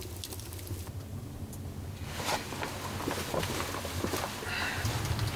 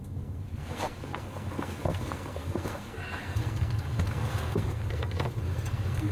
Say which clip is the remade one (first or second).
second